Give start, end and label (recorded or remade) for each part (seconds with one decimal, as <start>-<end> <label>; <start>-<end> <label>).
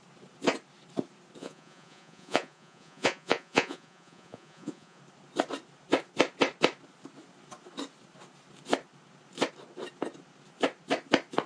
0.0-1.4 recorded; 1.4-5.0 remade; 5.0-11.5 recorded